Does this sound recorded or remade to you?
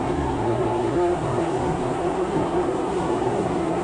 remade